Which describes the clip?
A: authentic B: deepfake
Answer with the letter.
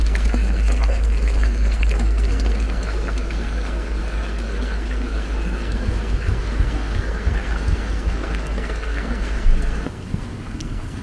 B